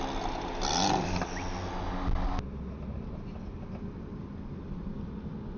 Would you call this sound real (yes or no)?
yes